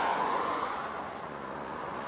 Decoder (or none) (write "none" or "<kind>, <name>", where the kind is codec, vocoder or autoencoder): vocoder, Vocos